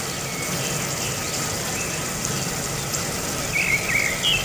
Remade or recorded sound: recorded